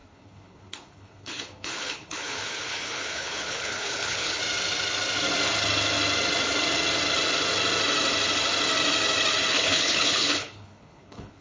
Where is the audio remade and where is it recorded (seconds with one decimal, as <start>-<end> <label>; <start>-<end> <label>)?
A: 0.0-4.4 remade; 4.4-9.5 recorded; 9.5-11.4 remade